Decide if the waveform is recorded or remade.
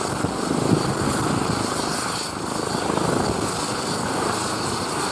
recorded